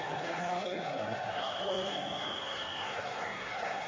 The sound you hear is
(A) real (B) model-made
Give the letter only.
B